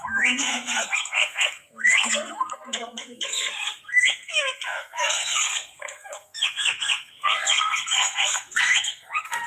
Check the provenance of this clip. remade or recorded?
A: remade